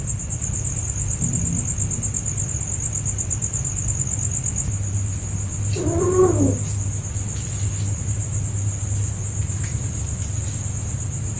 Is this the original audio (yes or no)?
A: yes